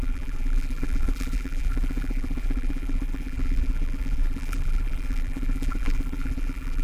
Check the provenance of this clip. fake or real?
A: fake